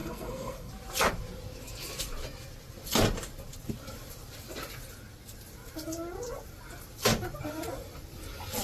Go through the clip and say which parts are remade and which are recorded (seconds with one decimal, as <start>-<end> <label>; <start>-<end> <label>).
0.0-0.7 remade; 0.7-8.6 recorded